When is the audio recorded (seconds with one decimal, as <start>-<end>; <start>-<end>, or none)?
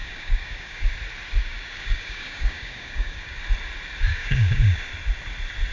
0.9-1.4; 3.4-4.1; 4.9-5.7